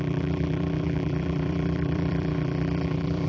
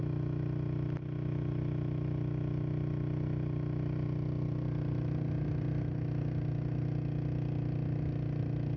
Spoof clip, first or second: first